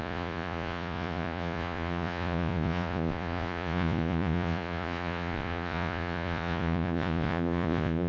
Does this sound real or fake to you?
fake